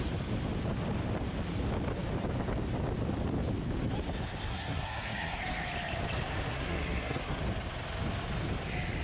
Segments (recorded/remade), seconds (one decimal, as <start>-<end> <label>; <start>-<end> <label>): 0.0-4.5 recorded; 4.5-5.4 remade; 5.4-6.5 recorded; 6.5-7.4 remade; 7.4-9.0 recorded